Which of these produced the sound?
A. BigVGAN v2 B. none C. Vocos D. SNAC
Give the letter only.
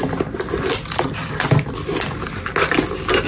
B